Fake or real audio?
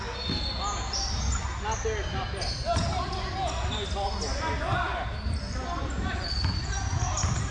real